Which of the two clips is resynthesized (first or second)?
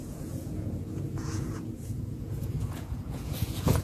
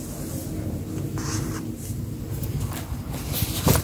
first